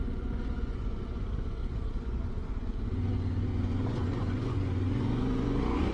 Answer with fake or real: fake